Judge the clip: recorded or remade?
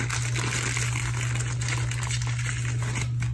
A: recorded